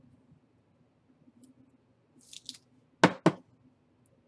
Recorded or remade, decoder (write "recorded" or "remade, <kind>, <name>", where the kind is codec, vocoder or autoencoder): recorded